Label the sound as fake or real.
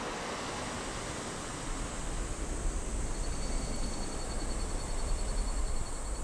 real